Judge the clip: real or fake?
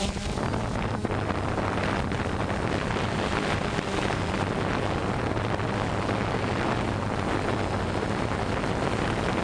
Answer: real